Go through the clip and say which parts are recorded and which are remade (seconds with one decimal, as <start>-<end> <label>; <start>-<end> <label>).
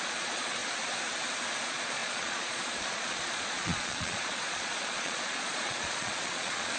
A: 0.0-0.6 remade; 0.6-1.6 recorded; 1.6-6.8 remade